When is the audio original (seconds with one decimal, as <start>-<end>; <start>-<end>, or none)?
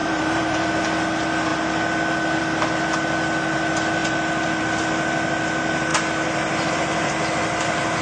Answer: 0.7-8.0